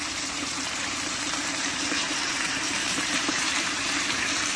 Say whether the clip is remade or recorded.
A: remade